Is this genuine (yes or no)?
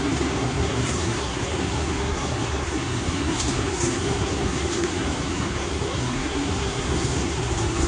no